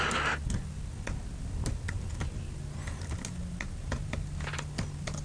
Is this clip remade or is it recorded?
recorded